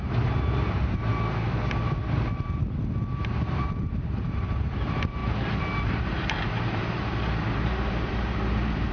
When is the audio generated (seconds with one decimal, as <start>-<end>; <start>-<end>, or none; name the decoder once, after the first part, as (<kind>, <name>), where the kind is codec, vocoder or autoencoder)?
0.0-1.1 (vocoder, BigVGAN v2); 3.3-5.2; 5.9-8.9